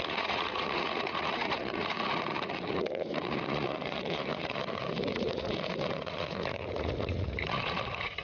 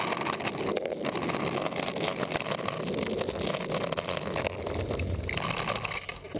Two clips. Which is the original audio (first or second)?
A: second